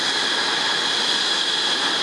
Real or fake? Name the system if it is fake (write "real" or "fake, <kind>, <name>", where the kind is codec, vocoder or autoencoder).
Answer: real